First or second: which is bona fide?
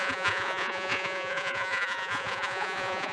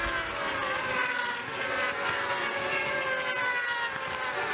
second